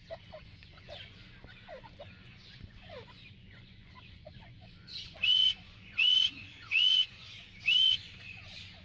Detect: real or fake fake